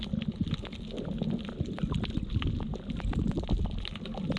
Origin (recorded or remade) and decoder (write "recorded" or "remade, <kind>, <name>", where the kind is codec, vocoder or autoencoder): recorded